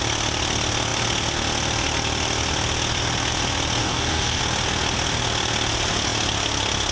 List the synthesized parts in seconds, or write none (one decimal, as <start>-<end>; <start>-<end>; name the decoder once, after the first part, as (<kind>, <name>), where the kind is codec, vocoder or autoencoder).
3.8-4.4 (codec, DAC)